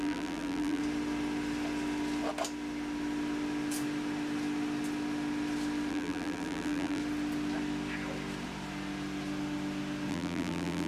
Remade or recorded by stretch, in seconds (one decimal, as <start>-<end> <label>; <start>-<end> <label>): 0.0-0.8 remade; 0.8-5.9 recorded; 5.9-7.0 remade; 7.0-10.1 recorded; 10.1-10.9 remade

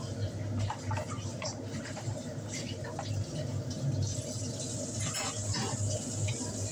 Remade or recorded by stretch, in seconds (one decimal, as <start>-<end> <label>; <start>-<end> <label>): 0.0-1.3 recorded; 1.3-3.7 remade; 3.7-6.7 recorded

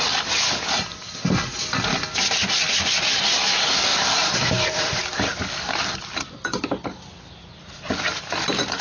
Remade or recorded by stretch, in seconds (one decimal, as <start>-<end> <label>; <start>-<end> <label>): 0.0-3.9 recorded; 3.9-5.0 remade; 5.0-8.8 recorded

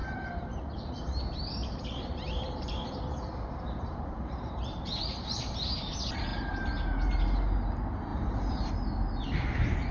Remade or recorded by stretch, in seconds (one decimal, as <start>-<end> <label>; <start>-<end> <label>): 0.0-1.2 remade; 1.2-1.6 recorded; 1.6-5.4 remade; 5.4-6.3 recorded; 6.3-7.2 remade; 7.2-8.1 recorded; 8.1-8.7 remade; 8.7-9.9 recorded